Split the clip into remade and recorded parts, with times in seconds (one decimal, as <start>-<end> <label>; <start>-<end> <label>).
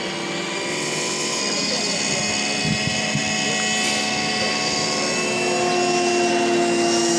0.0-0.7 recorded; 0.7-1.4 remade; 1.4-7.2 recorded